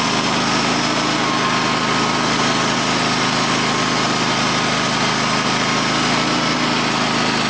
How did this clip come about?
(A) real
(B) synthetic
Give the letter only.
A